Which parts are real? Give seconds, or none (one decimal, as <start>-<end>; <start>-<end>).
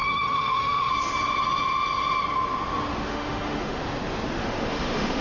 0.9-2.9; 3.8-4.4